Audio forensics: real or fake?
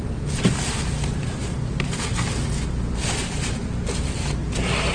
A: real